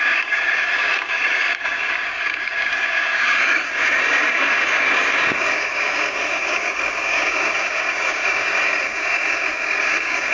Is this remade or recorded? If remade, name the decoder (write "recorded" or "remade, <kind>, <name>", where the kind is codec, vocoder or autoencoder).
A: remade, codec, DAC